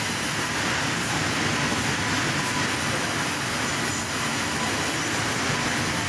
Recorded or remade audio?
recorded